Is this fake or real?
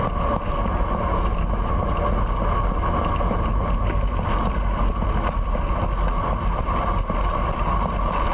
real